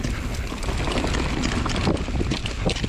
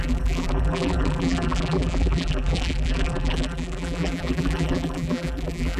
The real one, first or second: first